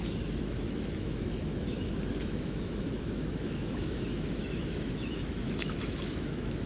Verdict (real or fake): fake